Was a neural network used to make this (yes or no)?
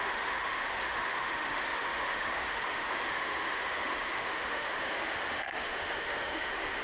yes